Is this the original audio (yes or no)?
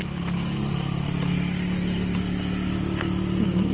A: yes